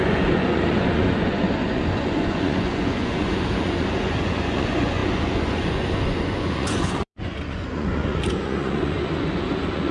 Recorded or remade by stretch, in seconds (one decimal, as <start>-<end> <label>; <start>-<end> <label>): 0.0-9.9 remade